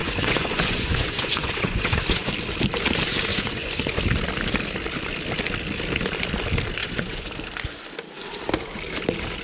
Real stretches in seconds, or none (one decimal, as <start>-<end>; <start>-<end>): 2.3-3.3; 4.0-6.8; 7.3-9.4